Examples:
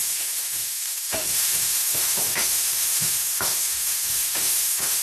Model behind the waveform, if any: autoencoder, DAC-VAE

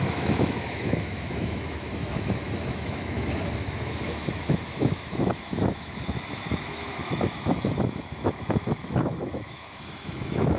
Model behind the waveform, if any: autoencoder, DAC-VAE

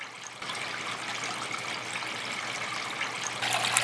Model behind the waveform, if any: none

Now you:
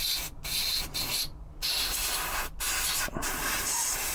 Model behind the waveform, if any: none